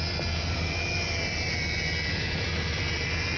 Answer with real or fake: real